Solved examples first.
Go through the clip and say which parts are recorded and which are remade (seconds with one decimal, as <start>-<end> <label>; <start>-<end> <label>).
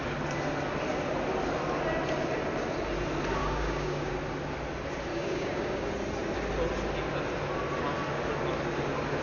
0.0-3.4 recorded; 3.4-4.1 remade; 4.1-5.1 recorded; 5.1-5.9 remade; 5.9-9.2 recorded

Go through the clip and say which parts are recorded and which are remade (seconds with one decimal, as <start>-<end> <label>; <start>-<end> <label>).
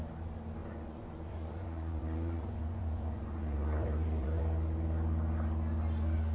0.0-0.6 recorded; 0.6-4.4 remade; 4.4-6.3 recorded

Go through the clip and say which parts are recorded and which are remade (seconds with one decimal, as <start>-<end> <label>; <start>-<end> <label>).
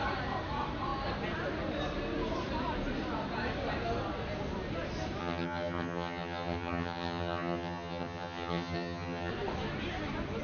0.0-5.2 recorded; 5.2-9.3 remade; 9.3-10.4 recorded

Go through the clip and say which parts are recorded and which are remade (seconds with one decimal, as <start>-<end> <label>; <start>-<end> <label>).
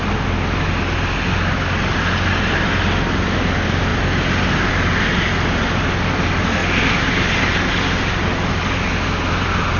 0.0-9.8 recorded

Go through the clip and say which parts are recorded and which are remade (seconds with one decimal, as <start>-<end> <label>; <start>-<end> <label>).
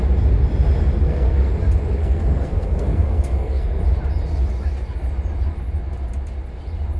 0.0-1.0 recorded; 1.0-1.5 remade; 1.5-2.0 recorded; 2.0-3.8 remade; 3.8-7.0 recorded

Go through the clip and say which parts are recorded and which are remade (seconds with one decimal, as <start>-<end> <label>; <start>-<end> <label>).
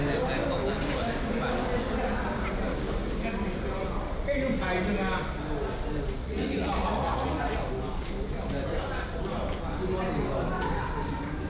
0.0-6.2 recorded; 6.2-7.6 remade; 7.6-11.5 recorded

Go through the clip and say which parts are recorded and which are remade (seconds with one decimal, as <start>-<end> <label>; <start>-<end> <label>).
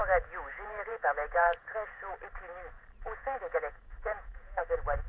0.0-2.1 remade; 2.1-3.0 recorded; 3.0-4.6 remade; 4.6-5.1 recorded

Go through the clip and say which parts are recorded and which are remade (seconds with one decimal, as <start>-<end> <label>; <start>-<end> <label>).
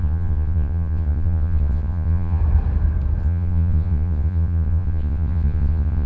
0.0-2.4 remade; 2.4-3.2 recorded; 3.2-6.1 remade